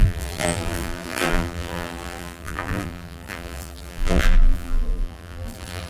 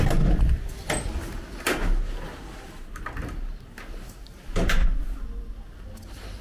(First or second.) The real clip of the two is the second